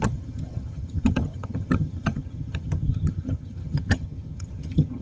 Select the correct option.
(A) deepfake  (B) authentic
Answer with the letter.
A